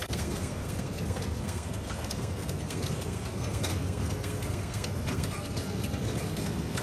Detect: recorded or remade remade